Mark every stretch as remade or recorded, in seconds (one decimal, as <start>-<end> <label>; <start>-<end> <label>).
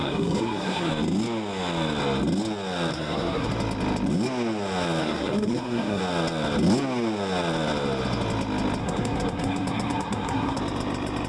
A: 0.0-0.9 remade; 0.9-2.9 recorded; 2.9-3.5 remade; 3.5-5.0 recorded; 5.0-6.0 remade; 6.0-8.8 recorded; 8.8-10.6 remade; 10.6-11.3 recorded